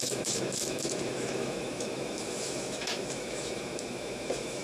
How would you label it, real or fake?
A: fake